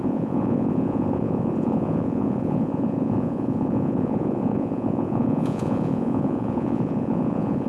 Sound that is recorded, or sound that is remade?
remade